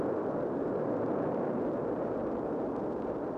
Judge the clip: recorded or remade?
recorded